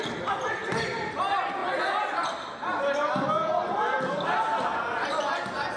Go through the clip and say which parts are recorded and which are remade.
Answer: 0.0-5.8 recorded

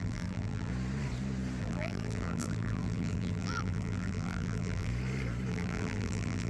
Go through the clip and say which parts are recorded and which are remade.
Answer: 0.0-0.7 remade; 0.7-1.6 recorded; 1.6-4.9 remade; 4.9-5.5 recorded; 5.5-6.5 remade

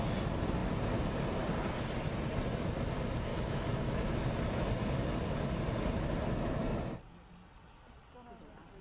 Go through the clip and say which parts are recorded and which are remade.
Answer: 0.0-3.3 recorded; 3.3-4.3 remade; 4.3-8.8 recorded

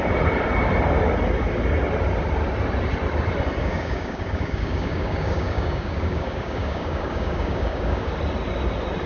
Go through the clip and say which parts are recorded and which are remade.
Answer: 0.0-3.6 recorded; 3.6-8.1 remade; 8.1-9.1 recorded

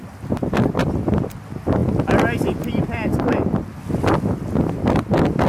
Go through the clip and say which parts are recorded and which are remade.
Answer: 0.0-5.5 recorded

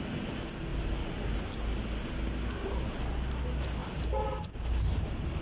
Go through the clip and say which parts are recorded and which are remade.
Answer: 0.0-5.4 recorded